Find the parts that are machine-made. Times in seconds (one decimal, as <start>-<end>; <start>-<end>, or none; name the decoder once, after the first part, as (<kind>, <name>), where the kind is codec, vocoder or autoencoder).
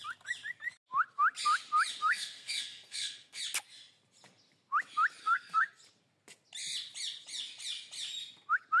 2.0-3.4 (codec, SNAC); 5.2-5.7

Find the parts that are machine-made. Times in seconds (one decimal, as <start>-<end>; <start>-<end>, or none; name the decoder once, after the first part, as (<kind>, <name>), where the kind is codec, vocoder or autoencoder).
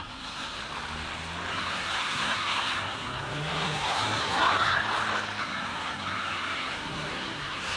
0.0-0.6 (codec, SNAC); 1.5-4.8; 5.4-7.8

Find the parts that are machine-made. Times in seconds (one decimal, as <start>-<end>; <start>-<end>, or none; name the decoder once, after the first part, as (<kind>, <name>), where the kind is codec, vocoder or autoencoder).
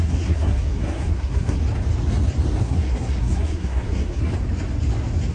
0.0-1.6 (codec, SNAC); 2.6-4.3